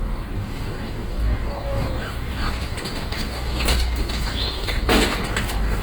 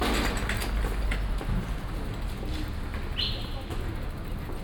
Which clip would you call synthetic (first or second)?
first